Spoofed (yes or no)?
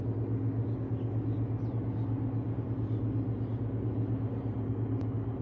no